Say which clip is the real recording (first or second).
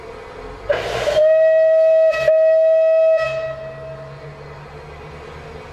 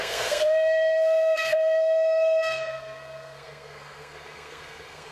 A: first